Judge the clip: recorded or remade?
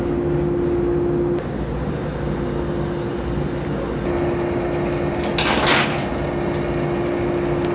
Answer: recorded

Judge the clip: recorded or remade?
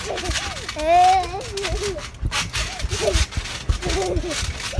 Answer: recorded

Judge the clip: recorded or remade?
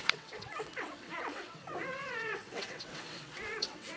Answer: remade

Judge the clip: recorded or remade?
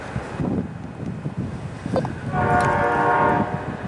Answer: recorded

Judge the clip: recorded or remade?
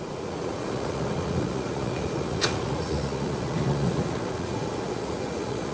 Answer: remade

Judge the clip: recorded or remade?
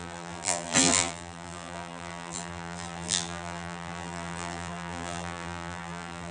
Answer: remade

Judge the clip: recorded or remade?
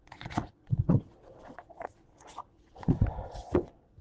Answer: remade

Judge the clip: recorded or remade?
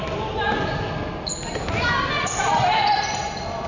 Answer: recorded